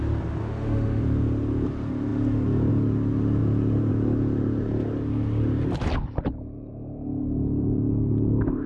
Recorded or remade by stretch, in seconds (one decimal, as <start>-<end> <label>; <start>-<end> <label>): 0.0-0.4 recorded; 0.4-1.0 remade; 1.0-8.7 recorded